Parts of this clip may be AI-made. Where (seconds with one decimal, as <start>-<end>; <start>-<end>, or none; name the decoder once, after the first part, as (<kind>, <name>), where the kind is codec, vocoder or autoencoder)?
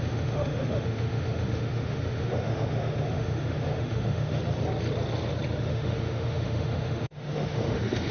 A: 0.0-4.4 (autoencoder, DAC-VAE); 5.6-8.1